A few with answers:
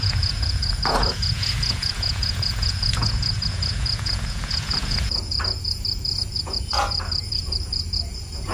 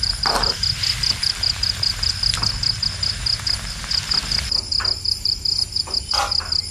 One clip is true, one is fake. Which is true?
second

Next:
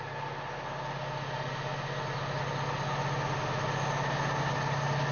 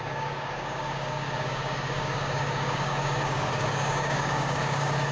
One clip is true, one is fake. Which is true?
first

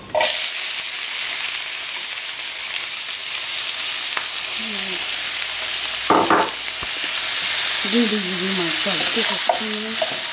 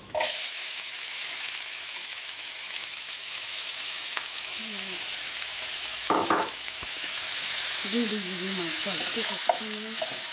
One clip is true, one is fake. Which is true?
first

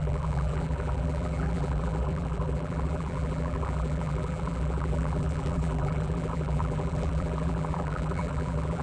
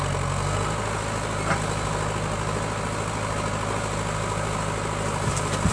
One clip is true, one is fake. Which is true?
second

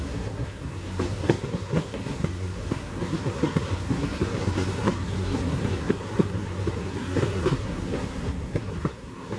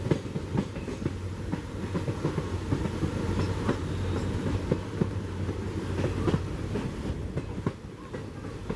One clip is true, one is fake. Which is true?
second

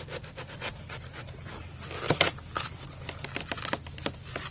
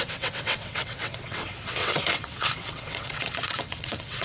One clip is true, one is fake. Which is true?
first